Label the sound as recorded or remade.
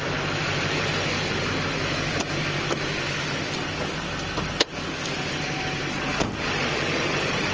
recorded